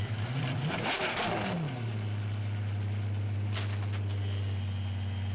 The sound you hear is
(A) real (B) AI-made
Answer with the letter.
A